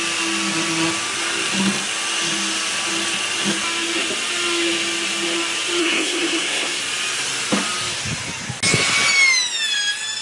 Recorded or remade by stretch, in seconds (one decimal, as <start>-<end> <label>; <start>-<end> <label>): 0.0-5.8 recorded; 5.8-6.8 remade; 6.8-10.2 recorded